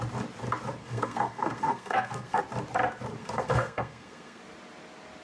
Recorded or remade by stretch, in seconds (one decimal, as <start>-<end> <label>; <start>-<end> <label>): 0.0-0.8 recorded; 0.8-2.4 remade; 2.4-3.2 recorded; 3.2-4.4 remade; 4.4-5.2 recorded

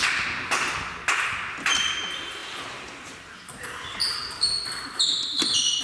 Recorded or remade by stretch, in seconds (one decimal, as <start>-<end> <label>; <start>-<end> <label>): 0.0-5.8 recorded

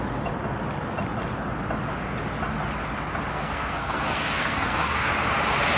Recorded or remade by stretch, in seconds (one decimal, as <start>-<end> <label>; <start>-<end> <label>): 0.0-3.3 recorded; 3.3-5.1 remade; 5.1-5.8 recorded

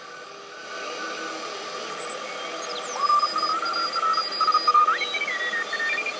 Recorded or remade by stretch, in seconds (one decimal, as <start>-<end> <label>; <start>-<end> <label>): 0.0-6.2 recorded

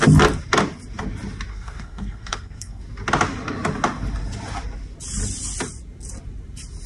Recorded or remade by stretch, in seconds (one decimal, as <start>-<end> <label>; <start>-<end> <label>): 0.0-1.5 recorded; 1.5-2.8 remade; 2.8-6.9 recorded

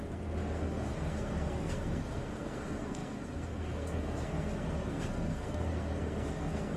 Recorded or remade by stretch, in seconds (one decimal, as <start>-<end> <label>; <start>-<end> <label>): 0.0-6.8 remade

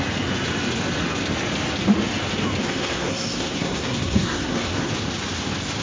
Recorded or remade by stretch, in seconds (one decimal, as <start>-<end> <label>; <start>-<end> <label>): 0.0-2.6 recorded; 2.6-4.9 remade; 4.9-5.8 recorded